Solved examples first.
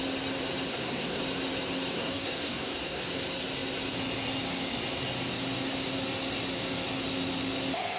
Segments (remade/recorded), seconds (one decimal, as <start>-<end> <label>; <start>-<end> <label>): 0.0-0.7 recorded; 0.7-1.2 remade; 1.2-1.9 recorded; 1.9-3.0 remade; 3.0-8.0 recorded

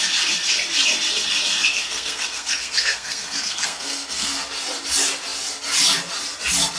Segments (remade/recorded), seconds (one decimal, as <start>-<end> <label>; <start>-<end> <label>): 0.0-1.7 recorded; 1.7-4.4 remade; 4.4-6.8 recorded

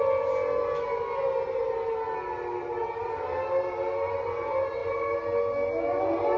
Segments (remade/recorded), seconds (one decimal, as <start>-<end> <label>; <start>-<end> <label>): 0.0-6.4 recorded